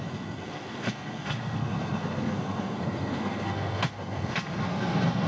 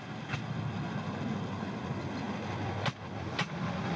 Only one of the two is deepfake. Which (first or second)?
first